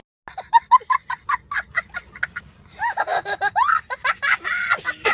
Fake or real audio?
real